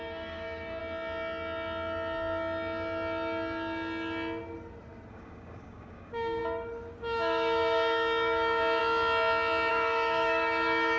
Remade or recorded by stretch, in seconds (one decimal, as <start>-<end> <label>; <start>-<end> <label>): 0.0-0.8 remade; 0.8-5.1 recorded; 5.1-6.4 remade; 6.4-7.0 recorded; 7.0-8.8 remade; 8.8-9.7 recorded; 9.7-11.0 remade